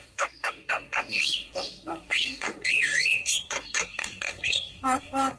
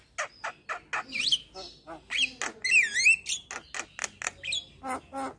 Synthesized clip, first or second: first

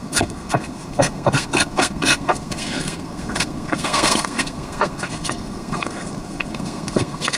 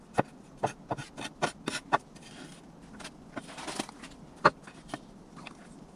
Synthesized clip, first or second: first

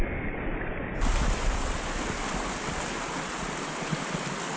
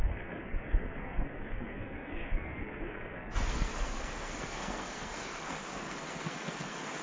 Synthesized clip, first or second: second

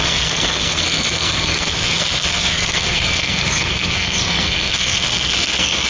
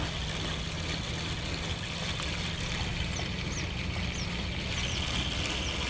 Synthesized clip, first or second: first